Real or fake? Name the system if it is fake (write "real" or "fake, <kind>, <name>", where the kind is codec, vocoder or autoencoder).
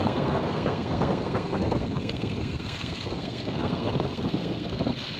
fake, codec, SNAC